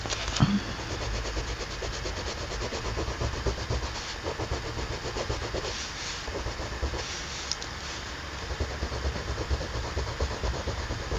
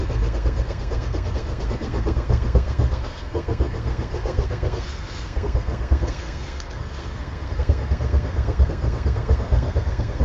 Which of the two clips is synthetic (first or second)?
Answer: second